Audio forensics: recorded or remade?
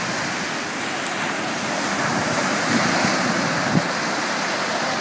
recorded